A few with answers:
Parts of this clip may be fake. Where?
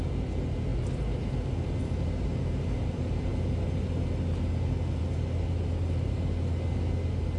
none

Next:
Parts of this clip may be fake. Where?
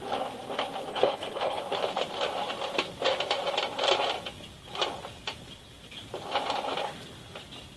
0.9-1.6 (codec, HILCodec)